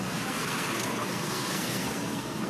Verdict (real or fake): fake